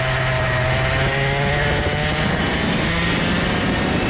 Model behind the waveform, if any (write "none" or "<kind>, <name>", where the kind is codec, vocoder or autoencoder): none